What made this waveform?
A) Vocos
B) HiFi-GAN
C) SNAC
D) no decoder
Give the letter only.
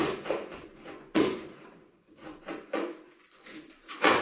A